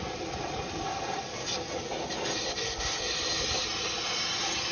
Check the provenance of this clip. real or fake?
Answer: real